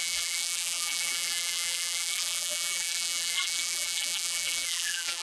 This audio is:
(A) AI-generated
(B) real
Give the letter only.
A